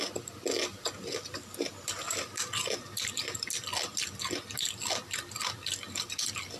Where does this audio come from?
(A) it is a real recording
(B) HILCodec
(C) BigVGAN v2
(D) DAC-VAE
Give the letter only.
A